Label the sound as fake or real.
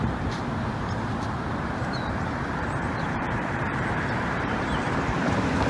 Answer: fake